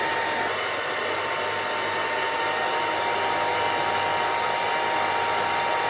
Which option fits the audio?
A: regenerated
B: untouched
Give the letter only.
B